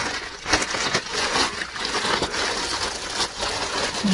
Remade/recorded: remade